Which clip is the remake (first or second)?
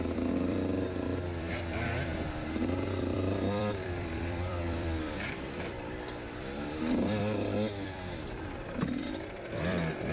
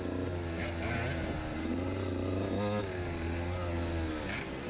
first